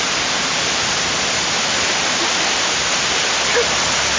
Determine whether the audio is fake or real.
real